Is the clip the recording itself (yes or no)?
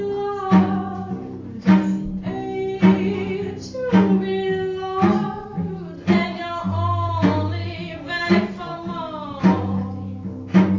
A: yes